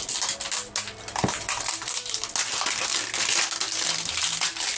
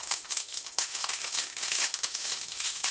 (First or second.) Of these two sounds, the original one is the first